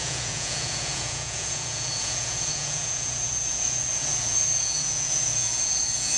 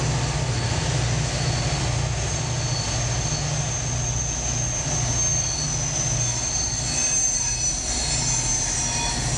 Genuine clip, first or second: second